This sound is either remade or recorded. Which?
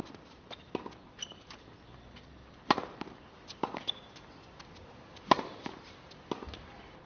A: recorded